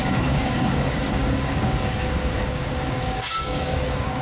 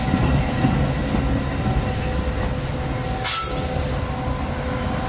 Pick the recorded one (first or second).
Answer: second